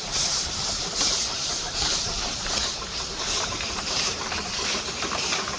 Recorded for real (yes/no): no